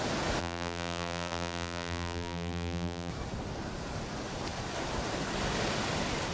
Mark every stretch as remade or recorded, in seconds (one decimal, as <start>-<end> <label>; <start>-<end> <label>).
0.0-0.4 recorded; 0.4-3.1 remade; 3.1-6.3 recorded